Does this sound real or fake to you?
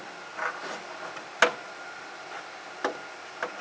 real